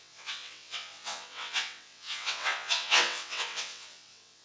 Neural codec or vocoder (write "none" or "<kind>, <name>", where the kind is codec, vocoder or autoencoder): vocoder, WaveNeXt